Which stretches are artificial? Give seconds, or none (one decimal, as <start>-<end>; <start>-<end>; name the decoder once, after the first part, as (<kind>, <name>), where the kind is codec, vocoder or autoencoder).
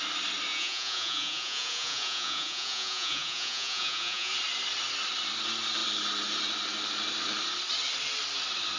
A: 0.5-4.3 (vocoder, Vocos)